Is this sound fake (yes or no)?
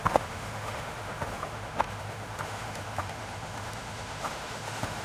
yes